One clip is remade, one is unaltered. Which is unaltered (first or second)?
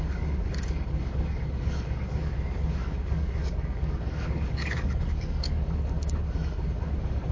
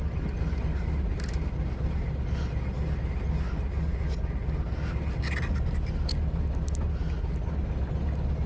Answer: second